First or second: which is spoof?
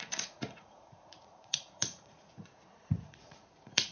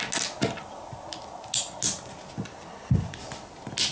first